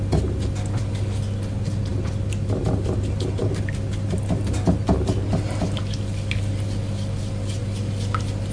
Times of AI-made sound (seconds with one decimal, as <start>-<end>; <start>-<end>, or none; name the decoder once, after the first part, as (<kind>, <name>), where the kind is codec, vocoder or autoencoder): none